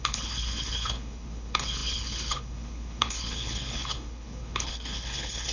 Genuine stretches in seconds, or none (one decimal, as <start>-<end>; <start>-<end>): none